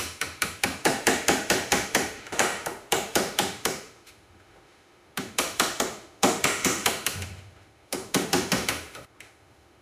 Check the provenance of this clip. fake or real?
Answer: fake